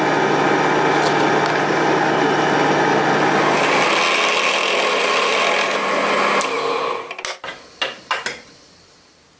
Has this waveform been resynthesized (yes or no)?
no